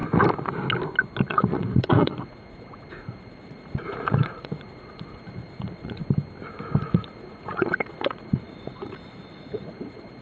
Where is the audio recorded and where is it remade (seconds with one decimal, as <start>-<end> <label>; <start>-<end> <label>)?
0.0-1.3 recorded; 1.3-6.0 remade; 6.0-6.6 recorded; 6.6-10.2 remade